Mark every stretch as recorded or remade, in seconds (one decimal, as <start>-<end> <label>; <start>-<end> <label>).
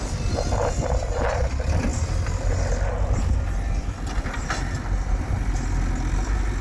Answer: 0.0-6.6 recorded